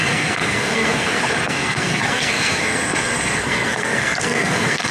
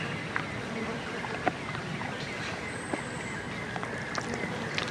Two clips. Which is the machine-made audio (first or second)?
first